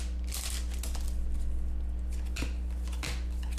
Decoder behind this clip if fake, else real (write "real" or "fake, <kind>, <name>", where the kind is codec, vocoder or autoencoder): real